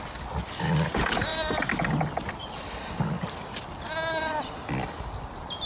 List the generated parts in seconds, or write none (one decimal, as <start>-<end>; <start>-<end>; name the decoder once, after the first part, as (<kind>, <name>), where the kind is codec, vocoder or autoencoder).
none